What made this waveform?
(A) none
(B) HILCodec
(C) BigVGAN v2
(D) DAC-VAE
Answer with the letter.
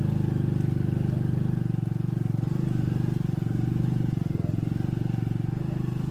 A